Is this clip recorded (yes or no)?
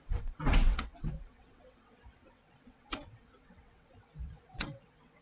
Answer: no